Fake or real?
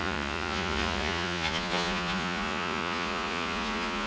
fake